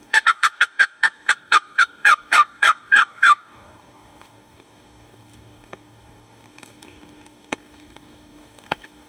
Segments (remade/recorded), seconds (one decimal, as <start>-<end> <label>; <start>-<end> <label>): 0.0-9.1 remade